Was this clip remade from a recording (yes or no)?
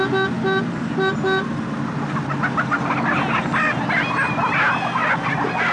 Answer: no